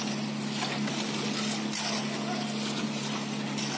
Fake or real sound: real